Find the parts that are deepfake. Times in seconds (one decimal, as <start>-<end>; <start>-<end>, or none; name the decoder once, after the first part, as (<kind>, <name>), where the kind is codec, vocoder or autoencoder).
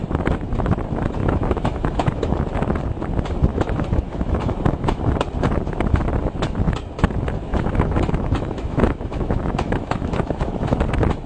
1.2-2.4 (autoencoder, DAC-VAE); 3.5-5.0; 7.5-10.8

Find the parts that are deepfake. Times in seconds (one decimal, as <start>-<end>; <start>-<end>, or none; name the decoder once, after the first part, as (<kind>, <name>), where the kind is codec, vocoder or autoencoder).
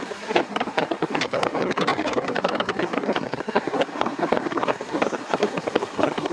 0.0-6.3 (codec, SNAC)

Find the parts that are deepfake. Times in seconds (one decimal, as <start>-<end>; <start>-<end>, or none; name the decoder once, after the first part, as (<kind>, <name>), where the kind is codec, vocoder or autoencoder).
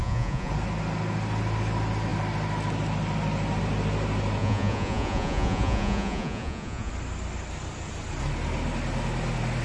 0.0-0.5 (vocoder, Vocos); 4.4-6.9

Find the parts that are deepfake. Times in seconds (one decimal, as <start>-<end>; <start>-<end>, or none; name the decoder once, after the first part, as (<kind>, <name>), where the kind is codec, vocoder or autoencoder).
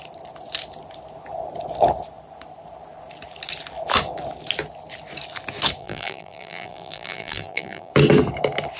5.8-7.9 (vocoder, BigVGAN v2)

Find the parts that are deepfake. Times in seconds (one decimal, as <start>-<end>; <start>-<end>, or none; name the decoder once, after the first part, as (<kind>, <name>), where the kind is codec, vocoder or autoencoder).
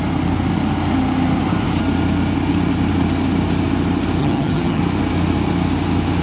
4.2-4.8 (vocoder, HiFi-GAN)